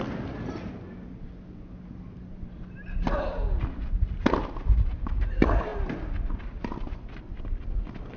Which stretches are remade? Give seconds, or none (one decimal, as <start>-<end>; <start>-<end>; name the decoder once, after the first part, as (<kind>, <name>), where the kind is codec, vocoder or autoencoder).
none